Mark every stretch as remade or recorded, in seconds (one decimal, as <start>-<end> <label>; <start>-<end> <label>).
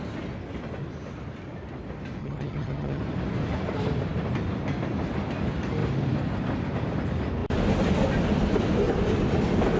0.0-2.2 recorded; 2.2-3.0 remade; 3.0-9.8 recorded